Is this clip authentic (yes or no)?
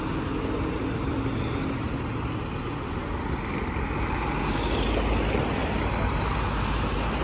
yes